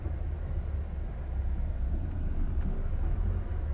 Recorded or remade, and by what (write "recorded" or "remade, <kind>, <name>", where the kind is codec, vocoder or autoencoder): recorded